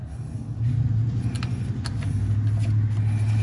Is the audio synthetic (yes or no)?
no